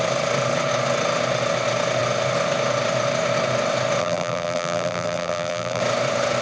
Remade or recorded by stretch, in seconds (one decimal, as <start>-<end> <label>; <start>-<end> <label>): 0.0-4.0 recorded; 4.0-5.8 remade; 5.8-6.4 recorded